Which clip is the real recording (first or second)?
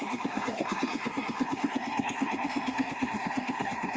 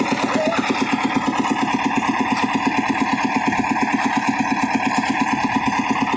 second